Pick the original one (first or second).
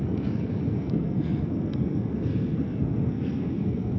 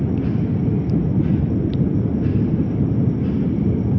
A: second